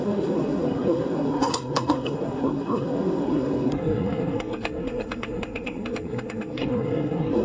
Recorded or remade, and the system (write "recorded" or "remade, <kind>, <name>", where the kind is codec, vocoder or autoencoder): remade, codec, SNAC